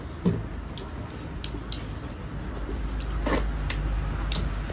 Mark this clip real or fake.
real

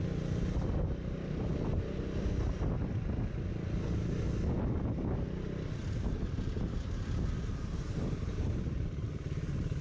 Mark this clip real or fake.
real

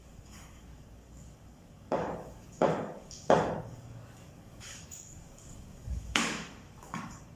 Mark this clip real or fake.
fake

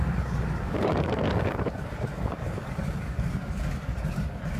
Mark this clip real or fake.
fake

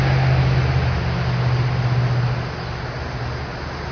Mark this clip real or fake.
real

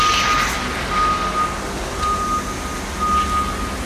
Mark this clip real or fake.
real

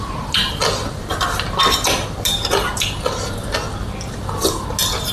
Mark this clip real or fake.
real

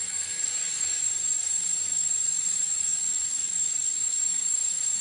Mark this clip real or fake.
fake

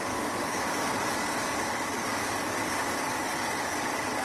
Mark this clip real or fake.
fake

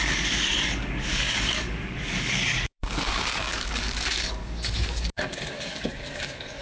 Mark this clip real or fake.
fake